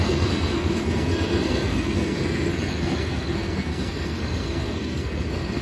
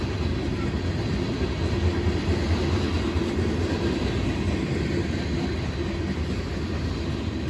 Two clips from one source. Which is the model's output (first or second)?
first